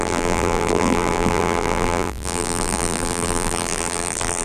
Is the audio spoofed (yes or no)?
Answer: yes